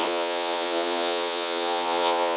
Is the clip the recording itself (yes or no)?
no